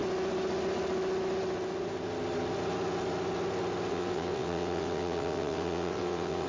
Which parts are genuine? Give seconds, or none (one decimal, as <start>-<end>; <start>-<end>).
0.0-3.9